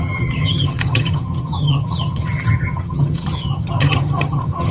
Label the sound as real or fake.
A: fake